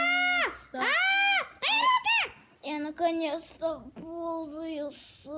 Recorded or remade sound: recorded